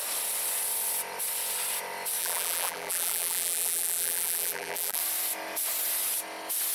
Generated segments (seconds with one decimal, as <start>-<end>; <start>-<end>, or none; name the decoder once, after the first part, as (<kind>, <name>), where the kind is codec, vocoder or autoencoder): 2.2-5.0 (vocoder, BigVGAN v2)